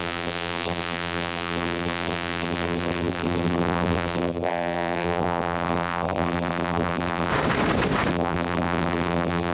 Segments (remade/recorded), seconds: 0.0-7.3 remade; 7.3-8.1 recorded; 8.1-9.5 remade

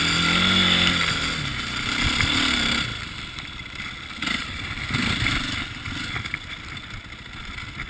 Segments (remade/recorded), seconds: 0.0-1.5 recorded; 1.5-4.9 remade; 4.9-7.9 recorded

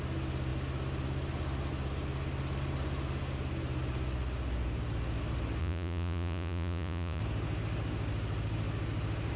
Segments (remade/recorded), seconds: 0.0-5.6 recorded; 5.6-7.2 remade; 7.2-9.4 recorded